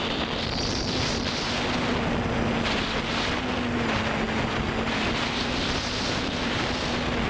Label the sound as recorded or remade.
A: recorded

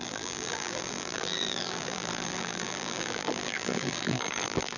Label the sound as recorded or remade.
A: remade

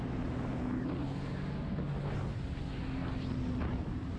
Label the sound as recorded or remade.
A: recorded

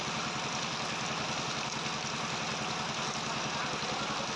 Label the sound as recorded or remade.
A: recorded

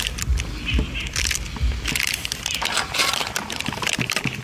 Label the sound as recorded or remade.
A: remade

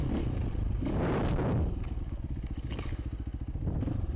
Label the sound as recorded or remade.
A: recorded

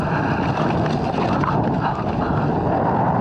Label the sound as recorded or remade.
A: recorded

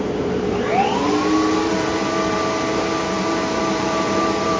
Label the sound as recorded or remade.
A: remade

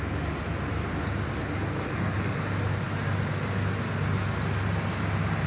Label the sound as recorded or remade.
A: recorded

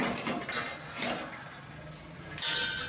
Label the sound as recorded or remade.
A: recorded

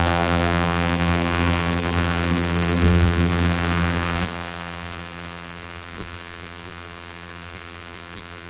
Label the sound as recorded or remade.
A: remade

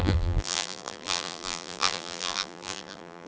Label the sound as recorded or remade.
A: remade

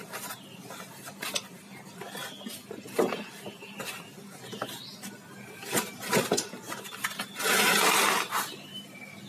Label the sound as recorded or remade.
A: recorded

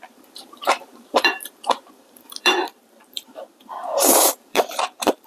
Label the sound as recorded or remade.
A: remade